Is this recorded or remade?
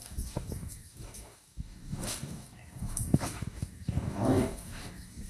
remade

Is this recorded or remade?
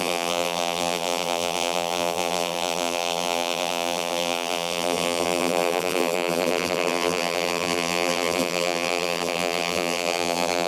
remade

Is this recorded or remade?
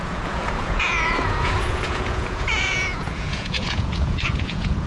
remade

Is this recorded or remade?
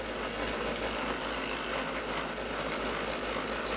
recorded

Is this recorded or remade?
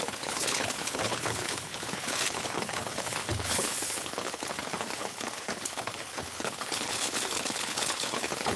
remade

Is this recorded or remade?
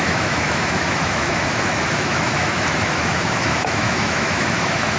remade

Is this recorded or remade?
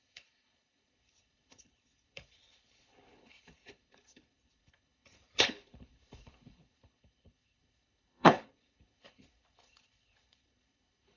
remade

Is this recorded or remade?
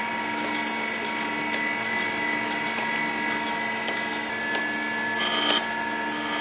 recorded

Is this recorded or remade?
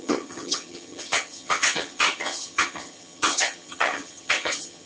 remade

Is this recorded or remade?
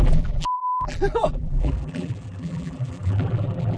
remade